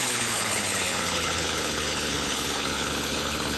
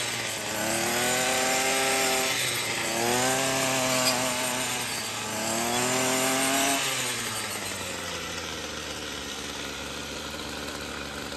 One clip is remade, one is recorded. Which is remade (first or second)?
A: first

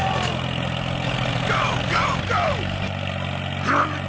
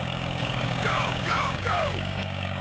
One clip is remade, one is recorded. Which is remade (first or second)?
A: second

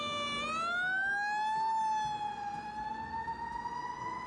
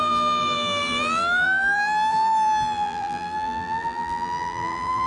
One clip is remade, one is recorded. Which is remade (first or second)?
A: second